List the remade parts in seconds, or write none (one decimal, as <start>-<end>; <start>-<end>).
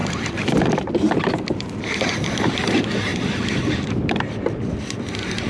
0.0-2.0; 3.1-4.8